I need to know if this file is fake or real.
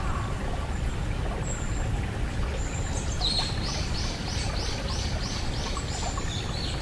real